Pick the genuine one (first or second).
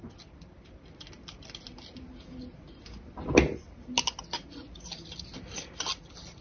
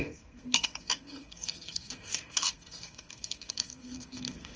first